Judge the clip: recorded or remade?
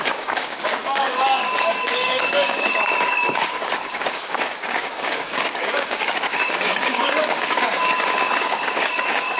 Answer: remade